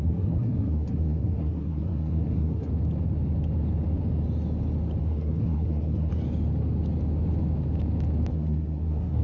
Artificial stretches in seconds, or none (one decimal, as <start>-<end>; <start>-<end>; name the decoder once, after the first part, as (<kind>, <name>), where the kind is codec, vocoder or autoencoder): 0.0-2.7 (codec, SNAC); 5.0-6.1; 8.3-9.2